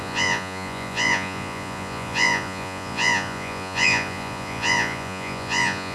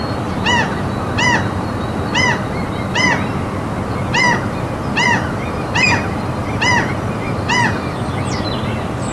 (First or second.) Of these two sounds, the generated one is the first